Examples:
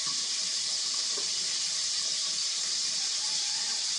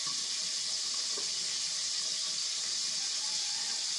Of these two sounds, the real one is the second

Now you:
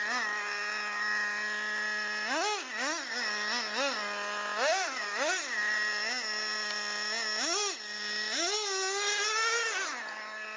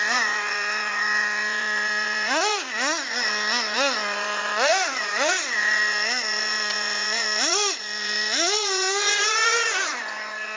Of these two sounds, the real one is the first